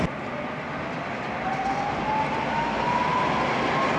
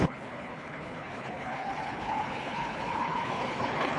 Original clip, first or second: first